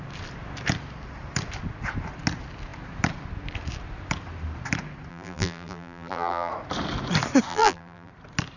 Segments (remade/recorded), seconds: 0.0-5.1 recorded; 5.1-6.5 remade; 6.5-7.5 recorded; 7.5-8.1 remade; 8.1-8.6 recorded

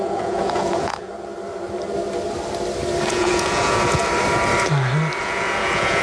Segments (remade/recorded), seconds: 0.0-1.1 remade; 1.1-3.1 recorded; 3.1-4.0 remade; 4.0-5.2 recorded; 5.2-6.0 remade